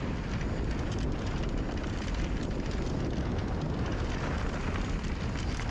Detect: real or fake real